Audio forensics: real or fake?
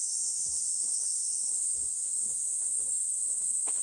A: fake